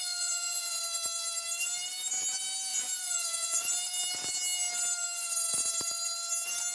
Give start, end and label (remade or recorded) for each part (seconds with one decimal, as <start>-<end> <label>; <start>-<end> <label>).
0.0-0.8 remade; 0.8-2.7 recorded; 2.7-3.7 remade; 3.7-6.7 recorded